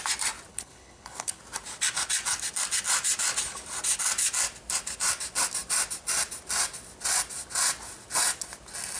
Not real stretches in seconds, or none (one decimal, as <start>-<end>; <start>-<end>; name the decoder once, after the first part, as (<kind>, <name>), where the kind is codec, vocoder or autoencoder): 0.5-1.4 (codec, HILCodec)